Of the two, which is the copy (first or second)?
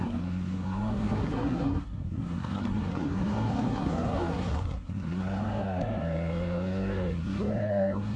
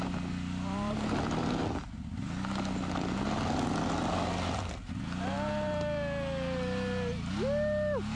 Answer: first